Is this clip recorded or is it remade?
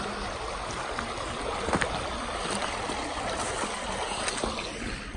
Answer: recorded